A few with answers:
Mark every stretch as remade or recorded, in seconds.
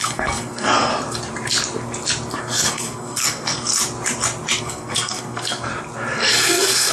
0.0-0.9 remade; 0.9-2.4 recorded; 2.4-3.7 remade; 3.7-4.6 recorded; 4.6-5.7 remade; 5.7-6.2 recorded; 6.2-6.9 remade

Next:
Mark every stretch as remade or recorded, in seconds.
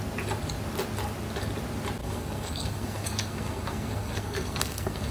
0.0-2.0 recorded; 2.0-5.1 remade